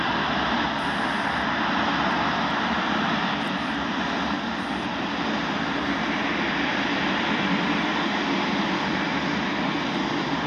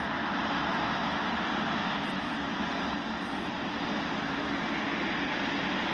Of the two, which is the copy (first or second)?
first